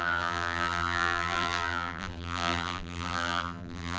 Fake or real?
fake